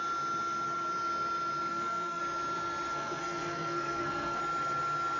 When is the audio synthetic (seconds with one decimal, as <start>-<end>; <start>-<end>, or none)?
1.7-2.2; 2.9-4.4